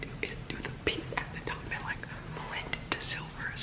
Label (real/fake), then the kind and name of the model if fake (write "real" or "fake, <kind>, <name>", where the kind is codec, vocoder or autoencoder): real